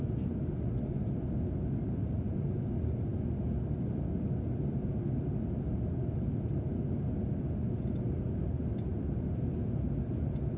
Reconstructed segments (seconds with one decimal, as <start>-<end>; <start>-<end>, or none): none